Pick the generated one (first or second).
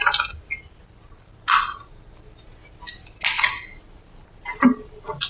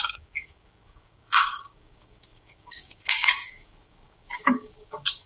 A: second